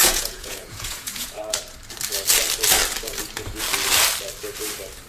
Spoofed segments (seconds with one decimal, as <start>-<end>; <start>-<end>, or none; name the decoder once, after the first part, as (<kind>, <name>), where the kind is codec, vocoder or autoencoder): 0.0-1.4 (vocoder, Vocos)